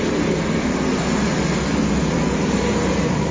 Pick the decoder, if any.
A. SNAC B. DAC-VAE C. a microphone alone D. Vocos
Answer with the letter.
C